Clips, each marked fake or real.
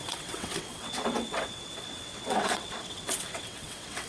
fake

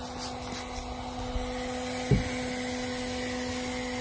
real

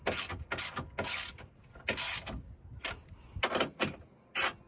real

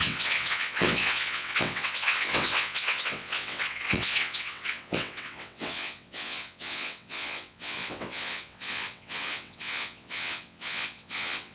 fake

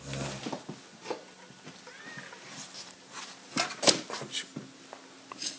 real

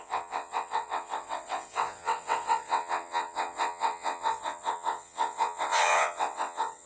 fake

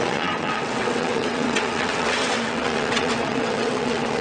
fake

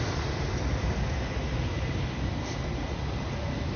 real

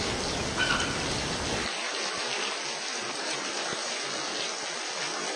real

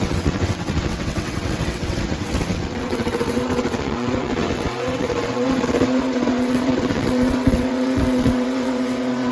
fake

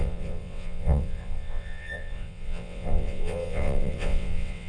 fake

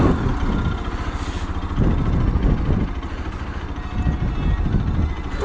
real